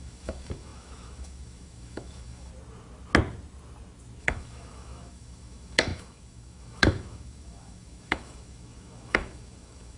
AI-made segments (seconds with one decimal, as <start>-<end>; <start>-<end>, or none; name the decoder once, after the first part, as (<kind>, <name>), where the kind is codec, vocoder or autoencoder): 0.0-2.5 (autoencoder, DAC-VAE); 4.2-10.0